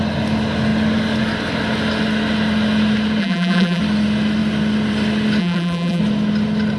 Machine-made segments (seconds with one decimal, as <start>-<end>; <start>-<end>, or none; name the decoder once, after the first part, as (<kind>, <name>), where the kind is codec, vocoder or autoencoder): 3.2-3.8 (vocoder, BigVGAN v2); 5.4-6.0